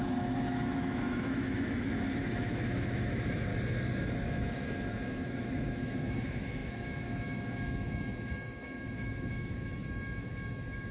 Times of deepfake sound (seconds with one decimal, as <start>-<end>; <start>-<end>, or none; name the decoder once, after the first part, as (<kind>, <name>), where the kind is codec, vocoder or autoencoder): 0.0-3.5 (autoencoder, DAC-VAE); 4.3-10.9